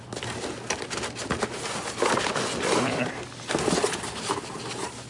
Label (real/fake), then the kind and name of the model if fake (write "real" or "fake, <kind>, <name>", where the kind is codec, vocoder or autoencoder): real